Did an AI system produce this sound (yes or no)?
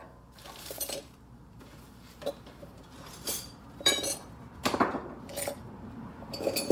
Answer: yes